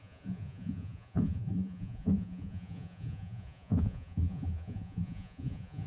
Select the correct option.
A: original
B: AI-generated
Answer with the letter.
B